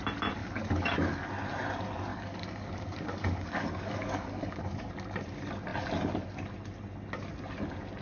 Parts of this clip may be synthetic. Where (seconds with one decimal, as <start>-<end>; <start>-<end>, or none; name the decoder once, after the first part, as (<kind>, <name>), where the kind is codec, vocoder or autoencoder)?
0.4-1.3 (codec, DAC); 2.1-4.9